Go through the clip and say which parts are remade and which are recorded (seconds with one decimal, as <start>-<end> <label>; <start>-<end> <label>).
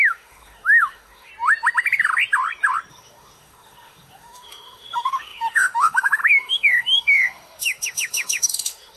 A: 0.0-1.3 remade; 1.3-2.9 recorded; 2.9-9.0 remade